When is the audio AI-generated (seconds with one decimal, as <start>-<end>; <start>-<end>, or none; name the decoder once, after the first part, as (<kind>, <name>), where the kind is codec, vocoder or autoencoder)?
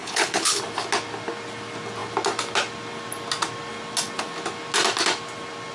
0.0-0.6 (codec, HILCodec)